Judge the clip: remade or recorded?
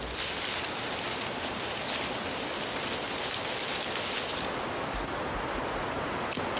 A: recorded